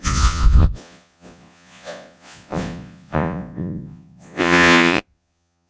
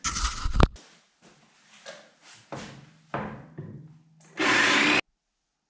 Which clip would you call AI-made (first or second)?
first